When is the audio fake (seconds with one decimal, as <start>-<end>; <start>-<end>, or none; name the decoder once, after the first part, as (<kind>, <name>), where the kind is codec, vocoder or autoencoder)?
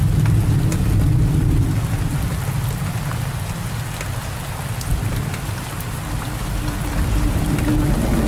4.9-7.4 (vocoder, BigVGAN v2)